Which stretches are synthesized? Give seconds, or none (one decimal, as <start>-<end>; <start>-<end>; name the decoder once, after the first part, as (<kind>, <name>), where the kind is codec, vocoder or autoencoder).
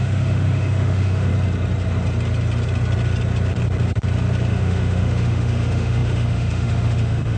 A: 0.0-1.3 (autoencoder, DAC-VAE); 4.5-7.4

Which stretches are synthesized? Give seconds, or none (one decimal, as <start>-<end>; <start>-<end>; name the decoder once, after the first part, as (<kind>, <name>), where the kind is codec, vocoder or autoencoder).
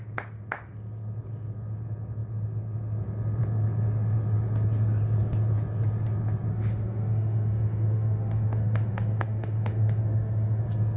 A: 6.5-10.6 (autoencoder, DAC-VAE)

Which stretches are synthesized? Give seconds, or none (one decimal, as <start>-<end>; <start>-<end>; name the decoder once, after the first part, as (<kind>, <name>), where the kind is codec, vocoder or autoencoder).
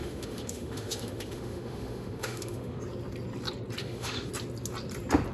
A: 0.0-2.8 (autoencoder, DAC-VAE); 3.8-4.3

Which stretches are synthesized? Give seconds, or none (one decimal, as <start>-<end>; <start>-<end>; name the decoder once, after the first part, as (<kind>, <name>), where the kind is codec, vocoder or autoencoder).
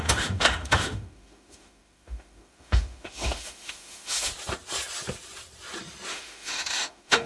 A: 0.0-4.3 (autoencoder, DAC-VAE); 6.1-7.3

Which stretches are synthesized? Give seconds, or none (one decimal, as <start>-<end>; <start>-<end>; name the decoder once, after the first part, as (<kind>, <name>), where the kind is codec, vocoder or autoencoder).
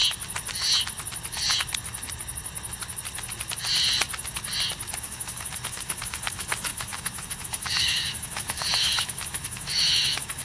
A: 5.0-10.4 (autoencoder, DAC-VAE)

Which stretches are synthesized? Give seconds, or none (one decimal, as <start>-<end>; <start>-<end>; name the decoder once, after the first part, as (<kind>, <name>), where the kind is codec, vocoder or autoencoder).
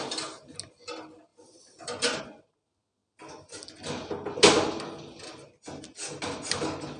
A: none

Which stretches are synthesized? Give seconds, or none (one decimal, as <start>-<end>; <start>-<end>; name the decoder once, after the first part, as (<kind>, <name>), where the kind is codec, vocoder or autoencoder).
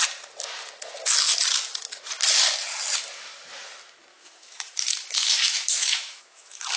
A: 4.1-6.8 (autoencoder, DAC-VAE)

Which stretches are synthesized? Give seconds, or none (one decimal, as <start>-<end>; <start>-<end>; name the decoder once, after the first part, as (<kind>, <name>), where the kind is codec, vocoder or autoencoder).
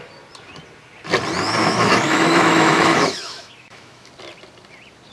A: 1.6-4.1 (autoencoder, DAC-VAE)